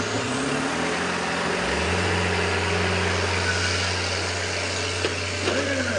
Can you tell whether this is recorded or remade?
recorded